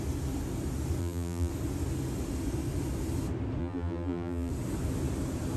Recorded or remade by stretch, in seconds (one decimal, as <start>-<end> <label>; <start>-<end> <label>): 0.0-1.0 recorded; 1.0-1.5 remade; 1.5-3.6 recorded; 3.6-4.5 remade; 4.5-5.6 recorded